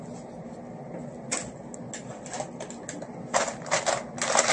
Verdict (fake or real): real